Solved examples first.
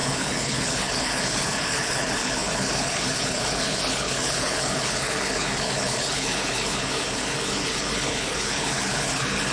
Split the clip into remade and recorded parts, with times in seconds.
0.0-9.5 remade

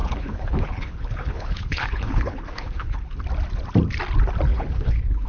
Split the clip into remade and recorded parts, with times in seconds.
0.0-3.2 remade; 3.2-4.5 recorded; 4.5-5.3 remade

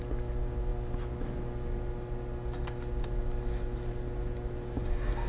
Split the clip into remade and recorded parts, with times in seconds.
0.0-5.3 recorded

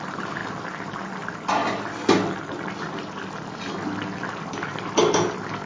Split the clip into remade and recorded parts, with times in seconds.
0.0-5.7 recorded

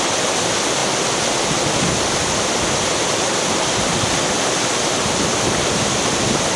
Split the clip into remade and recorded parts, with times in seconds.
0.0-6.6 recorded